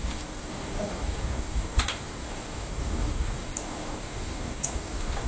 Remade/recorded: remade